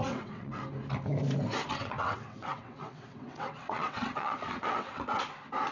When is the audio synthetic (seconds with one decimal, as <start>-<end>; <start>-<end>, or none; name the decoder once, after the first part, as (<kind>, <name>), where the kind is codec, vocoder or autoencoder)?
0.0-0.6 (vocoder, WaveNeXt); 1.8-5.2